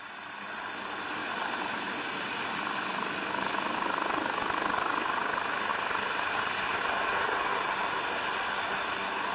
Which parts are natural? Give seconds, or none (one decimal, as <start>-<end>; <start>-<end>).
0.0-1.2; 2.0-5.7; 6.8-9.3